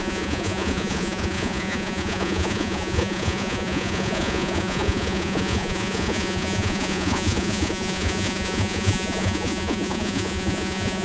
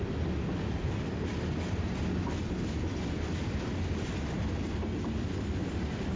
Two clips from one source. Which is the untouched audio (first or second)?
second